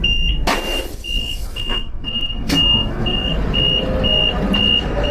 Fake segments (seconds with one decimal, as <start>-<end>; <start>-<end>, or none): 1.2-3.4